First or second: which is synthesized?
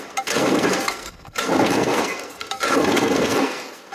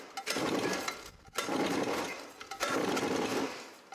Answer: first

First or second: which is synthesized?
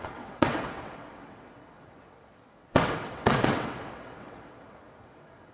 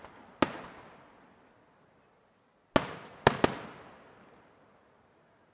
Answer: first